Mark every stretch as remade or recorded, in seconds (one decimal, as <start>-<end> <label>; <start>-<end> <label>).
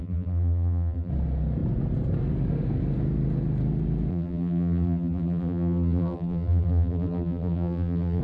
0.0-1.1 remade; 1.1-4.1 recorded; 4.1-8.2 remade